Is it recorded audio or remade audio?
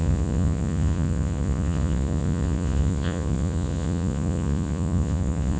remade